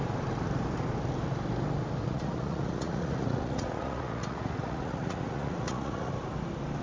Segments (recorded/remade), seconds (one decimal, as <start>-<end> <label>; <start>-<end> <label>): 0.0-2.0 recorded; 2.0-6.1 remade; 6.1-6.8 recorded